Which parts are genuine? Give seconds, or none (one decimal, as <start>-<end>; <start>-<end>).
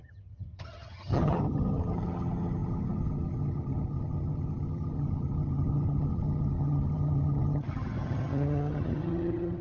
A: none